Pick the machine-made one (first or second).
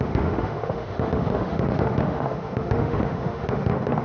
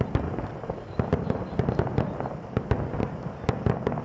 first